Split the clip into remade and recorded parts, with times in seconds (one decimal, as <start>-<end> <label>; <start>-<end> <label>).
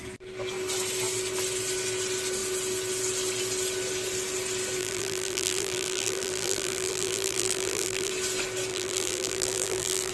0.0-4.8 recorded; 4.8-8.1 remade; 8.1-8.7 recorded; 8.7-10.1 remade